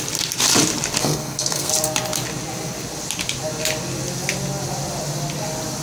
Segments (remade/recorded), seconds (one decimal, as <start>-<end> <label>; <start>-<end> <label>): 0.0-1.0 recorded; 1.0-1.7 remade; 1.7-5.8 recorded